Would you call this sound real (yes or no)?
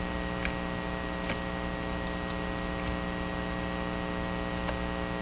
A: yes